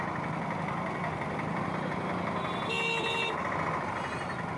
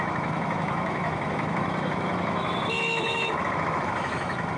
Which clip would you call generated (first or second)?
second